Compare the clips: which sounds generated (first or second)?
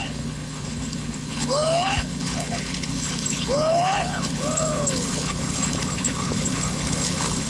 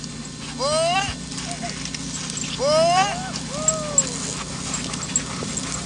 first